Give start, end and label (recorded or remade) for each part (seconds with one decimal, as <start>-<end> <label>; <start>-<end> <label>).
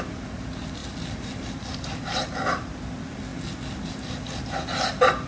0.0-5.3 remade